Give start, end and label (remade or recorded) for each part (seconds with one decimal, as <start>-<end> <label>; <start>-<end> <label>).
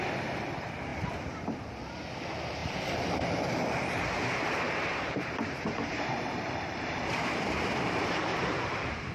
0.0-2.6 recorded; 2.6-7.1 remade; 7.1-8.3 recorded; 8.3-9.1 remade